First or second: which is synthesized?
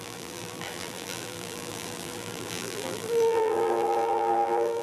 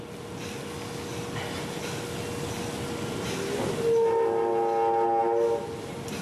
first